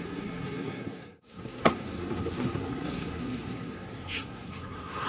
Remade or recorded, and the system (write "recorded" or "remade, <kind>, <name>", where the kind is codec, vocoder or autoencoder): remade, codec, SNAC